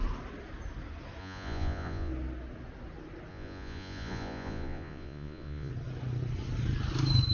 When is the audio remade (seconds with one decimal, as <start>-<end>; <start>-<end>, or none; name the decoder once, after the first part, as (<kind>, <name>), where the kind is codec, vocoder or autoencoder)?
1.2-2.1 (vocoder, Vocos); 3.3-5.7